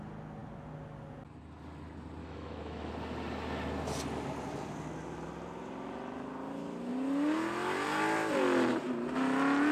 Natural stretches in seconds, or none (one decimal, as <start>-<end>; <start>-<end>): 0.0-2.2; 2.9-9.7